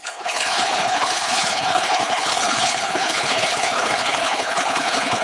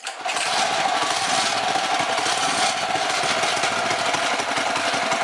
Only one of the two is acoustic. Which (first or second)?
second